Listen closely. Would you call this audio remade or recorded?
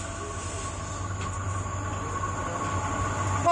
recorded